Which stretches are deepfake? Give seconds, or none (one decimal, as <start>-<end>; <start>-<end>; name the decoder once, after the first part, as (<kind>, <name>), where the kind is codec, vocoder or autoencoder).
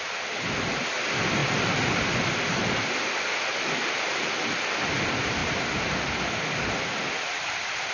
1.4-2.3 (vocoder, BigVGAN v2); 5.4-6.0